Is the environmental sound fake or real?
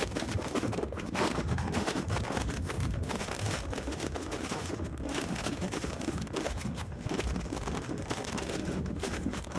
fake